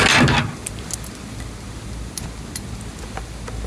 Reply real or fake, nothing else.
real